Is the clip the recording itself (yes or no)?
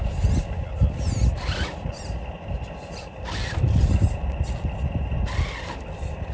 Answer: yes